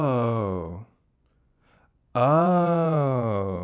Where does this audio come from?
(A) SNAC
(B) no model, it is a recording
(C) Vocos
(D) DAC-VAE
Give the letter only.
C